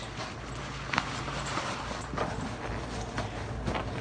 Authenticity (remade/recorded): recorded